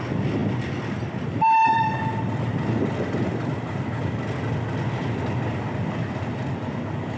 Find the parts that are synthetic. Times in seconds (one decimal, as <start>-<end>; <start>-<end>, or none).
none